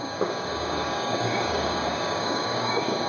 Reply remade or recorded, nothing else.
remade